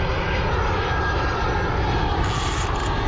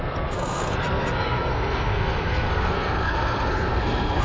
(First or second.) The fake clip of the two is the second